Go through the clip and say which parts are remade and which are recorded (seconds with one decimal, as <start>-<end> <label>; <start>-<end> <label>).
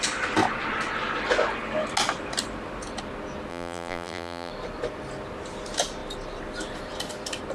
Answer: 0.0-3.5 recorded; 3.5-4.5 remade; 4.5-7.5 recorded